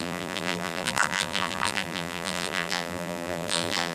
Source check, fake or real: fake